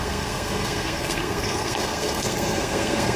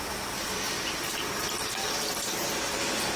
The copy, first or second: first